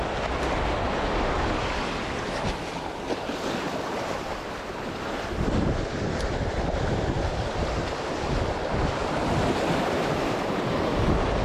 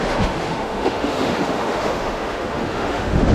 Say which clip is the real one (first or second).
first